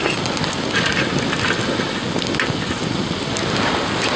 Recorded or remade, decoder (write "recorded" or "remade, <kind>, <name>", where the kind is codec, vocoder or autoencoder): recorded